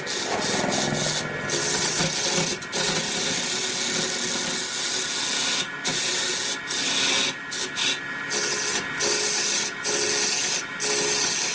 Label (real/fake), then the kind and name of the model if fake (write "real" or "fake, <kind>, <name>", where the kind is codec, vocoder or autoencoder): real